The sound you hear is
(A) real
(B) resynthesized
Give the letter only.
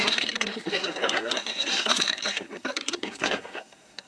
B